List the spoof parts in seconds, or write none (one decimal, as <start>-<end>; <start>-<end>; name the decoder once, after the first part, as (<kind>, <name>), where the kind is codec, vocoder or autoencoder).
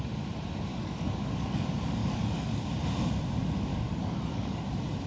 0.7-1.6 (codec, DAC); 2.0-2.6; 3.7-4.6